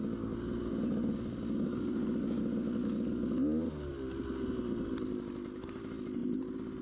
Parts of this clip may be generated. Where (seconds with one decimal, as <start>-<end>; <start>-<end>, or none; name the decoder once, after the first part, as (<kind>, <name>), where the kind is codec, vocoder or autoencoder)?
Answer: 3.9-4.5 (vocoder, BigVGAN v2)